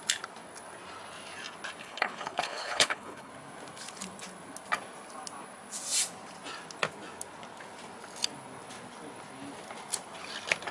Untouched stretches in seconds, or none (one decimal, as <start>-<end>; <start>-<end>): 0.0-1.8; 3.3-10.7